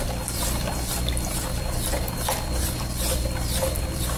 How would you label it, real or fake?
fake